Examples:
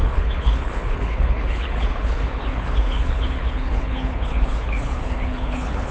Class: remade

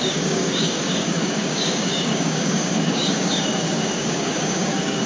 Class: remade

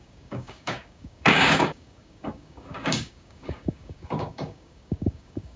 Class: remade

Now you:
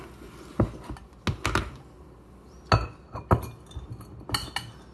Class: recorded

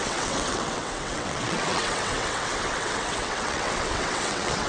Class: remade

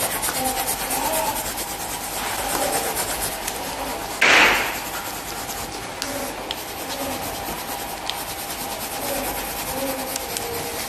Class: recorded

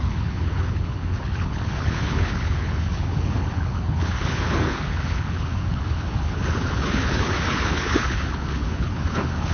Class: remade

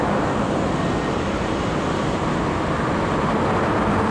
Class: recorded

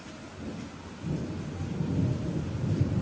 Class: recorded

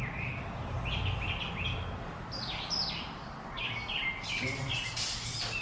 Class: recorded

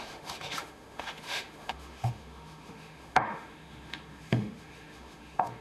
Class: remade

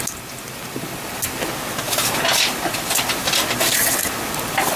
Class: recorded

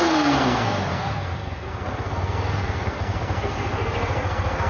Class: remade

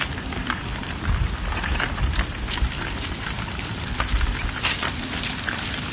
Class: remade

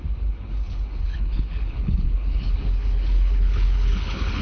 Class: remade